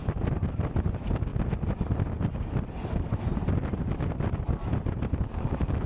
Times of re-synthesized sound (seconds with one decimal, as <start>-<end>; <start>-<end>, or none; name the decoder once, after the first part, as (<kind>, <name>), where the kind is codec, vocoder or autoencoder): 1.3-4.8 (vocoder, BigVGAN v2)